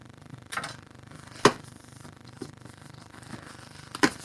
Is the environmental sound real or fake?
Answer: real